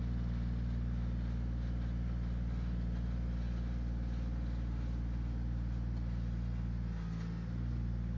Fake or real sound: real